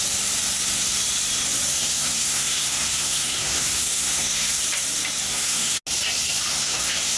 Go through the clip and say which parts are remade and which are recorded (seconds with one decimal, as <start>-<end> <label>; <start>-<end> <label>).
0.0-1.7 recorded; 1.7-4.6 remade; 4.6-5.3 recorded; 5.3-5.8 remade; 5.8-6.5 recorded; 6.5-7.2 remade